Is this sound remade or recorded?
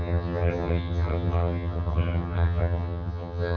remade